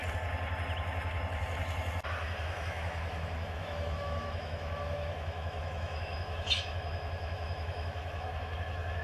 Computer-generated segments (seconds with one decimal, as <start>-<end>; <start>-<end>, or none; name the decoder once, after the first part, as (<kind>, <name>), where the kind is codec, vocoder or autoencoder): 2.4-9.0 (autoencoder, DAC-VAE)